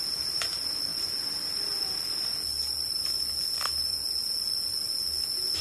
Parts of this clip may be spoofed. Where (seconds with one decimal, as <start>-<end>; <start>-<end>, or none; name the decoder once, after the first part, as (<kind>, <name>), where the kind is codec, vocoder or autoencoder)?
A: 0.9-4.1 (vocoder, BigVGAN v2)